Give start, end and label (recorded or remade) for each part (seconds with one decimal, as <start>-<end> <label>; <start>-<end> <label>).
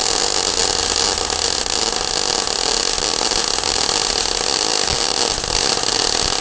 0.0-6.4 recorded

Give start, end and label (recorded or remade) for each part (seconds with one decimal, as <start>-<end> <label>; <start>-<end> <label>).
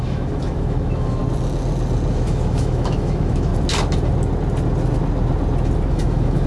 0.0-1.2 remade; 1.2-2.1 recorded; 2.1-3.5 remade; 3.5-5.9 recorded; 5.9-6.5 remade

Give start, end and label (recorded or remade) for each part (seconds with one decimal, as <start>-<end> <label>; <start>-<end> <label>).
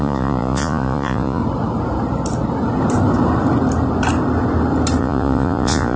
0.0-1.4 remade; 1.4-5.0 recorded; 5.0-6.0 remade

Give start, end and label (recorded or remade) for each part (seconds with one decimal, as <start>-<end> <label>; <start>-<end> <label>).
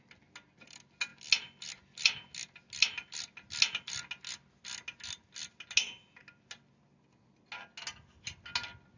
0.0-9.0 recorded